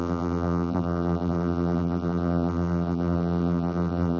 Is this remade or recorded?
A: remade